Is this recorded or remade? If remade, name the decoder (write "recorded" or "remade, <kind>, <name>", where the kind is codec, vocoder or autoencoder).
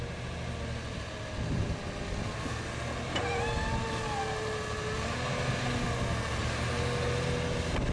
recorded